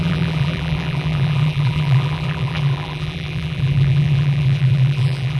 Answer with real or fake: fake